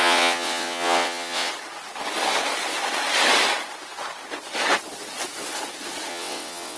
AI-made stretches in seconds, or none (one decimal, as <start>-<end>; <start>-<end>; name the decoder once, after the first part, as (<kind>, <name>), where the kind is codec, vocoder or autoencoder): 0.0-1.5 (vocoder, WaveNeXt); 6.1-6.8